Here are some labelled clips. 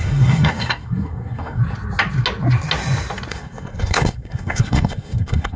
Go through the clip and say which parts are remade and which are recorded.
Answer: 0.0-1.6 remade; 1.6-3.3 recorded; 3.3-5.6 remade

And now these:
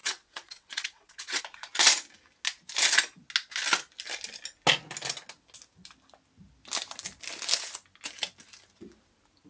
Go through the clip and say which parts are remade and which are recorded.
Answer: 0.0-1.4 remade; 1.4-9.5 recorded

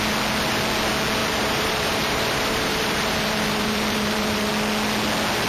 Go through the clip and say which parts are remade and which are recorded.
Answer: 0.0-1.2 recorded; 1.2-4.5 remade; 4.5-5.5 recorded